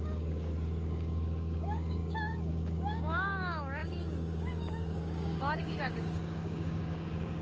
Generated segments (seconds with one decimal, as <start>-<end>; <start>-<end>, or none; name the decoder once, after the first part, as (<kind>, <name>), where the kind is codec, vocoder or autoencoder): 0.0-7.4 (codec, DAC)